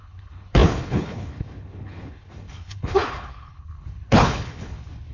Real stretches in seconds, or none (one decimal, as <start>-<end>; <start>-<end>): none